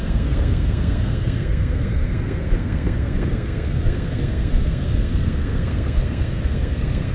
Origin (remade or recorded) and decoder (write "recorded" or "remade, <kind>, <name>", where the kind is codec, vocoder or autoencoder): remade, codec, SNAC